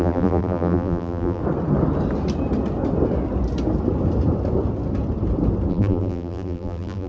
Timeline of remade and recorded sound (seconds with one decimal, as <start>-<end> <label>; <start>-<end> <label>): 0.0-1.4 remade; 1.4-5.7 recorded; 5.7-7.1 remade